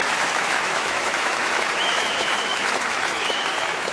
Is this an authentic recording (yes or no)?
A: no